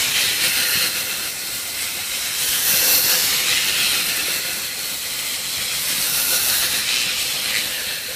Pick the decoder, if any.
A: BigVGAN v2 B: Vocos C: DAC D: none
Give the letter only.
D